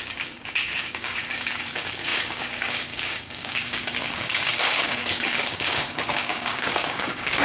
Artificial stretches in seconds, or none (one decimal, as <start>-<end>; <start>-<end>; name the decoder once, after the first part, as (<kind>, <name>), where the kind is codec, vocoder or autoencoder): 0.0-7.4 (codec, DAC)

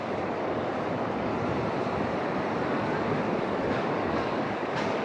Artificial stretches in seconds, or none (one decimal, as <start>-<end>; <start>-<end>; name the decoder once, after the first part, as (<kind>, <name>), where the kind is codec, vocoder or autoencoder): 0.0-1.3 (codec, DAC); 2.7-5.0

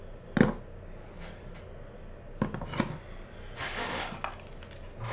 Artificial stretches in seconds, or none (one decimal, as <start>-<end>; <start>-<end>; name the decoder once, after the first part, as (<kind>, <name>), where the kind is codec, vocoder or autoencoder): 1.0-1.5 (codec, DAC)

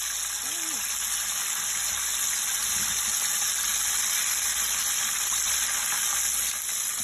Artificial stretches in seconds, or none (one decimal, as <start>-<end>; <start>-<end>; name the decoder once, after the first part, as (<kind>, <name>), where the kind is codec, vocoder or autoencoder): none

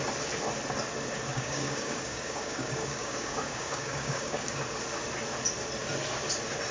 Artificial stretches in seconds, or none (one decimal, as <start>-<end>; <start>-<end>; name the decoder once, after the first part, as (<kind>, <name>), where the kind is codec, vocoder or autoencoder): 1.3-4.6 (codec, DAC)

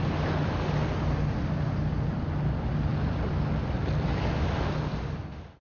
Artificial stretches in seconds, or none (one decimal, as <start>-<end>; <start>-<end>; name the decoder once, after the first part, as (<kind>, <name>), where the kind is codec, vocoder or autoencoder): none

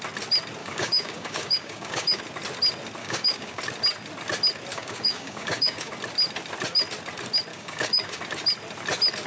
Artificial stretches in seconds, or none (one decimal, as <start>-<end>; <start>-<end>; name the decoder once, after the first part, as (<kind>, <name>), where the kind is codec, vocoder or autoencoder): 0.6-2.2 (codec, DAC); 3.0-3.6; 4.7-5.9; 7.5-8.2